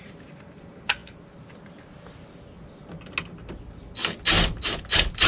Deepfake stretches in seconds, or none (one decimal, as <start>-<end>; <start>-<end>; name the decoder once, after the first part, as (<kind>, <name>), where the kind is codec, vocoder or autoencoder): none